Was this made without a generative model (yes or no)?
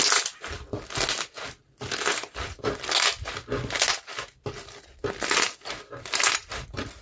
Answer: yes